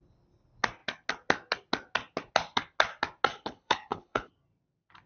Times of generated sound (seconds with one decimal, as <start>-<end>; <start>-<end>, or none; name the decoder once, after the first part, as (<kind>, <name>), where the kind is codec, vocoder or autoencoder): 3.3-4.3 (codec, HILCodec)